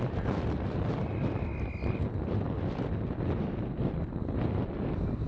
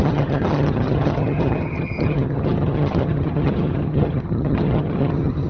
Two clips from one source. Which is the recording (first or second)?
first